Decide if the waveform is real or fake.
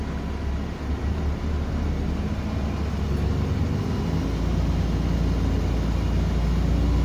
real